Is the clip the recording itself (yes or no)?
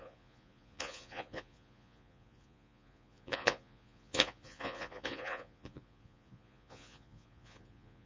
no